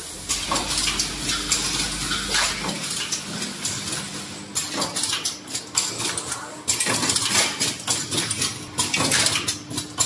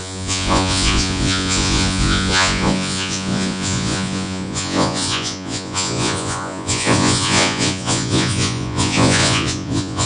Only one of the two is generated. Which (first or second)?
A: second